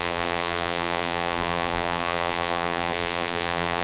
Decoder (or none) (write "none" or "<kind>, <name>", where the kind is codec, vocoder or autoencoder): vocoder, BigVGAN v2